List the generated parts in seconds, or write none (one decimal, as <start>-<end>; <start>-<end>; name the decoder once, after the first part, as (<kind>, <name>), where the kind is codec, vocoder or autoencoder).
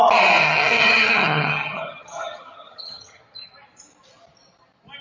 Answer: 0.4-3.2 (vocoder, HiFi-GAN)